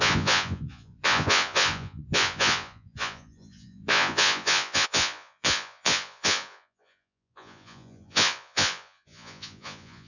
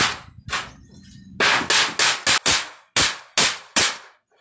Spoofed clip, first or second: first